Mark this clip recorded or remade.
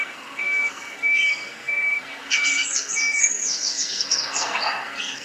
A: remade